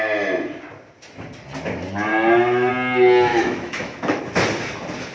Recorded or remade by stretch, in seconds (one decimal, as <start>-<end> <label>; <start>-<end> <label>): 0.0-2.1 recorded; 2.1-2.7 remade; 2.7-3.3 recorded; 3.3-4.2 remade; 4.2-5.1 recorded